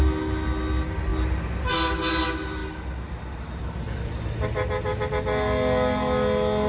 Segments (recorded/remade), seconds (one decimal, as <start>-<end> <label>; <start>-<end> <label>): 0.0-6.7 recorded